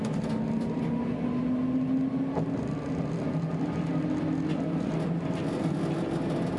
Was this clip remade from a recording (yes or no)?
no